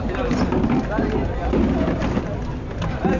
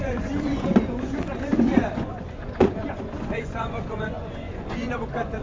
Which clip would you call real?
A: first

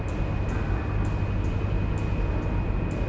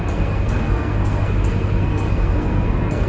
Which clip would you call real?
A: first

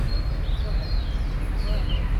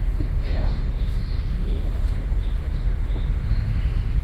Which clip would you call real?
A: first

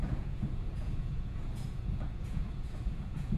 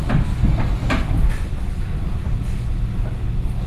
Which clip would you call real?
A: second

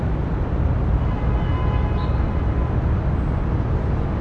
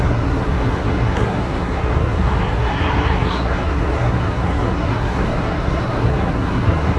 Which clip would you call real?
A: first